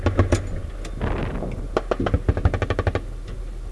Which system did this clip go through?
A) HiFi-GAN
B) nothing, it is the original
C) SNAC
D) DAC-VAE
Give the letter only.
B